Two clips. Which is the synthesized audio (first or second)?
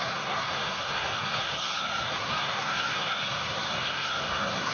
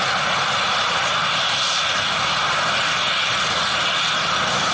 first